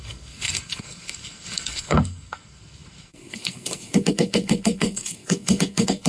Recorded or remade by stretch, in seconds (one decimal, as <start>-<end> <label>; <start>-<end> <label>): 0.0-6.1 remade

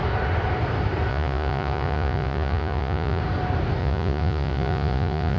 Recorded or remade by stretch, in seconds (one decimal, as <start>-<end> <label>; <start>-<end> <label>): 0.0-1.1 recorded; 1.1-3.2 remade; 3.2-3.8 recorded; 3.8-5.4 remade